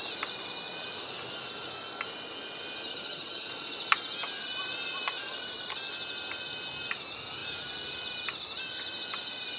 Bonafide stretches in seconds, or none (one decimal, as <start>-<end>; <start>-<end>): 0.0-2.9; 3.5-9.6